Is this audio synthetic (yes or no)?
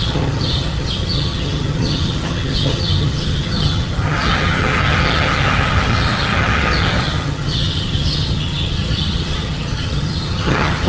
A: yes